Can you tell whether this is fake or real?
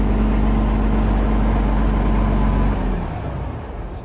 real